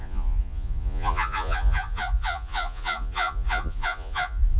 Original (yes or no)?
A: no